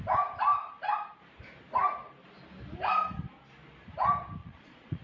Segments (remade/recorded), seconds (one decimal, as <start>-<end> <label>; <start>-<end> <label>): 0.0-4.4 recorded; 4.4-5.0 remade